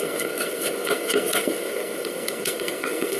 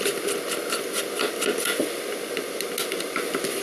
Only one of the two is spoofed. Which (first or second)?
first